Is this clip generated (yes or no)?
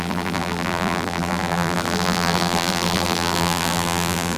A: yes